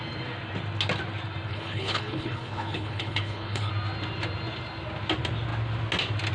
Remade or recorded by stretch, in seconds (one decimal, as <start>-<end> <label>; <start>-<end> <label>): 0.0-1.5 recorded; 1.5-3.7 remade; 3.7-6.3 recorded